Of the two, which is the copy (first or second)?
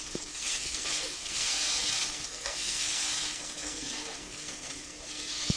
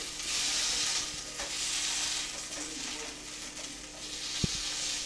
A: first